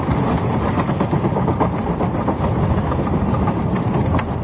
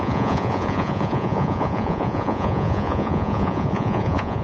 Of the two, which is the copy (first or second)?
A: second